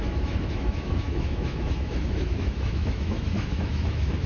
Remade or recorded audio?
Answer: remade